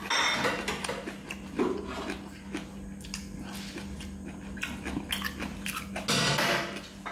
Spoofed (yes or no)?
no